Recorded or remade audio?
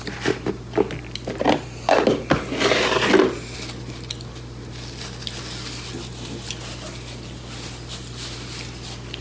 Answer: recorded